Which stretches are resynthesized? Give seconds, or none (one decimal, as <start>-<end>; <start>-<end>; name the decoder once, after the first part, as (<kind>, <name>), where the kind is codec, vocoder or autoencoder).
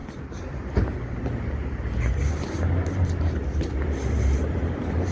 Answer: none